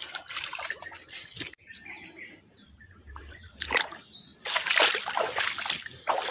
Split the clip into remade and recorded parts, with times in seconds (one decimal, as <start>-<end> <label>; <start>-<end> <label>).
0.0-2.6 recorded; 2.6-3.8 remade; 3.8-6.3 recorded